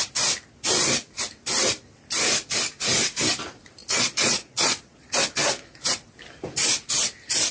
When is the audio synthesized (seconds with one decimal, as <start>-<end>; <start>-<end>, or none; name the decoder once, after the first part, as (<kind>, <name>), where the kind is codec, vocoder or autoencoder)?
3.8-5.1 (vocoder, Vocos)